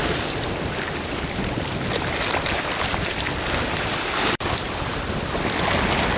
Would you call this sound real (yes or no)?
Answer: yes